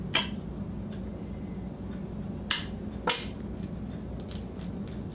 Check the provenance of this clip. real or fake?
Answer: real